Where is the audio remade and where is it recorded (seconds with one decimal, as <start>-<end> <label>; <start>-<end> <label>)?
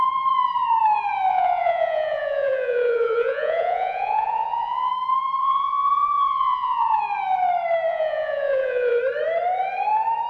0.0-1.3 recorded; 1.3-4.9 remade; 4.9-5.4 recorded; 5.4-7.0 remade; 7.0-7.9 recorded; 7.9-9.0 remade; 9.0-10.3 recorded